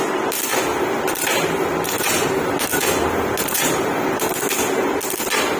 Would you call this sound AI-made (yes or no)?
no